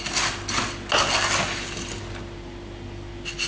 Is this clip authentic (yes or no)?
yes